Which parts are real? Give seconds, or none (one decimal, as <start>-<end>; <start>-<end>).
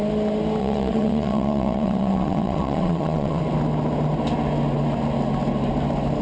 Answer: 0.0-0.6; 3.4-6.2